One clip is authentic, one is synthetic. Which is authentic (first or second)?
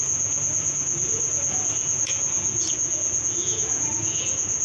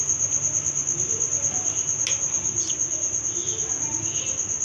second